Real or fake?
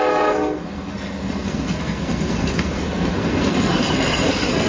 fake